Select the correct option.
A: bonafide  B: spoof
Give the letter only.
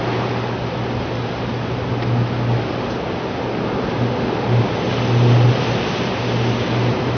A